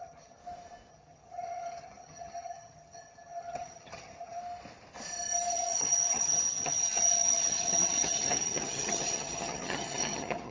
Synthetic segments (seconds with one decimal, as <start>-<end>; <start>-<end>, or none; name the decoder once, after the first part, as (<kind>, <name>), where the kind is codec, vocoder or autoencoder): 0.0-0.4 (vocoder, HiFi-GAN); 0.9-4.4; 5.5-10.5